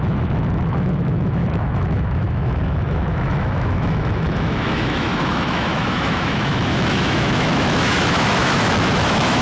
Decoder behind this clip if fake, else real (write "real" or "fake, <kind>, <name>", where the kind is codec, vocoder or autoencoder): fake, autoencoder, DAC-VAE